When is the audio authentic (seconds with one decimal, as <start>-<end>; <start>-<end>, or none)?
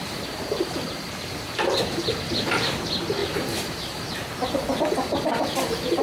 1.8-3.2; 4.8-6.0